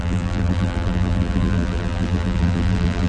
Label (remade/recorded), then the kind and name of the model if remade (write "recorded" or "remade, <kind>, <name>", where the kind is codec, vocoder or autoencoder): remade, vocoder, BigVGAN v2